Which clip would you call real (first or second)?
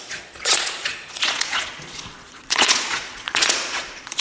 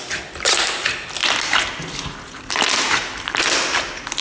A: second